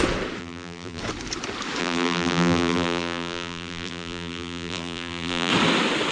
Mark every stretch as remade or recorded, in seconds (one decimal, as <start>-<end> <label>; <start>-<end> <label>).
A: 0.0-0.4 recorded; 0.4-1.0 remade; 1.0-1.8 recorded; 1.8-5.5 remade; 5.5-6.1 recorded